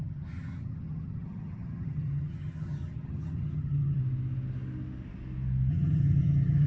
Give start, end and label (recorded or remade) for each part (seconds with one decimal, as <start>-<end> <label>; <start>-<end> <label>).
0.0-4.0 remade; 4.0-5.7 recorded; 5.7-6.7 remade